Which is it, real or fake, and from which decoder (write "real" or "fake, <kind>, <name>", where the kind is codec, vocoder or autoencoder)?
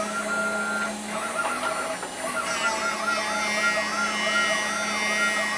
real